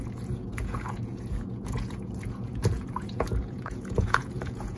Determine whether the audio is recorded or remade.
remade